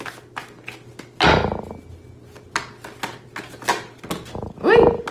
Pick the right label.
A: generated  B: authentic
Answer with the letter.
B